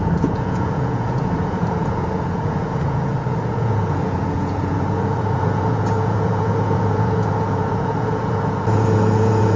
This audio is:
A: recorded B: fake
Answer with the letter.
B